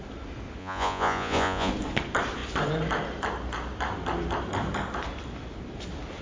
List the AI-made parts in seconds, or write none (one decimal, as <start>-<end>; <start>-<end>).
0.6-1.7